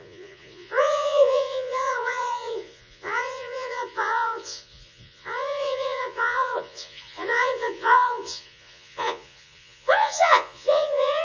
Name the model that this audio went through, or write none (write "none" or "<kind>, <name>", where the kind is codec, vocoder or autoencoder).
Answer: vocoder, Vocos